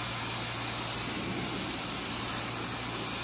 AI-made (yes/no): no